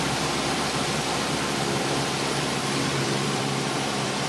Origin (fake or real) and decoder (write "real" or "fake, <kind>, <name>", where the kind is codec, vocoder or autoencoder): fake, vocoder, BigVGAN v2